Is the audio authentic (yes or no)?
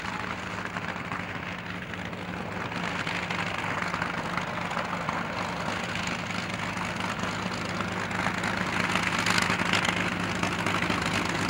yes